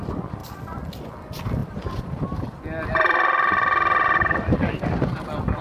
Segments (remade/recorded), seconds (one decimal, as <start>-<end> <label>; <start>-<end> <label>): 0.0-0.4 recorded; 0.4-1.1 remade; 1.1-1.6 recorded; 1.6-5.0 remade; 5.0-5.6 recorded